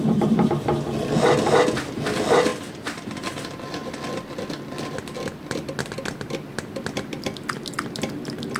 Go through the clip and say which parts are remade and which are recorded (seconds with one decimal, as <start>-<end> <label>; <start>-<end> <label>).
0.0-8.6 recorded